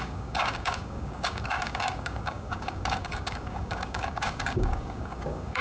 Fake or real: fake